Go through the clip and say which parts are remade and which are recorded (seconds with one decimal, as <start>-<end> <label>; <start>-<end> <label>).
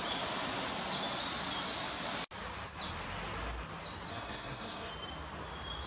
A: 0.0-4.1 recorded; 4.1-4.9 remade; 4.9-5.9 recorded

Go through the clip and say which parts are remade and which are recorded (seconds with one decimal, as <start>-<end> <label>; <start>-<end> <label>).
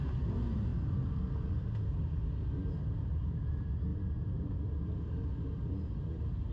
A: 0.0-6.5 recorded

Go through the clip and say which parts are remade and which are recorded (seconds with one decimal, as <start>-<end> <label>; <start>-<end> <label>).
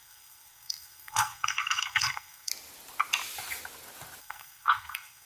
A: 0.0-2.5 remade; 2.5-4.2 recorded; 4.2-5.2 remade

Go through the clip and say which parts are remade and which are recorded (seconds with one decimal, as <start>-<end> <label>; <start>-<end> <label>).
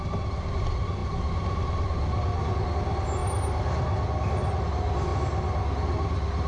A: 0.0-6.5 recorded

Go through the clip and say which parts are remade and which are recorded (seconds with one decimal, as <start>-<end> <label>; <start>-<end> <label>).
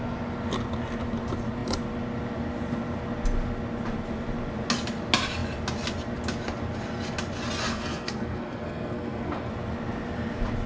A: 0.0-7.7 recorded; 7.7-9.5 remade; 9.5-10.7 recorded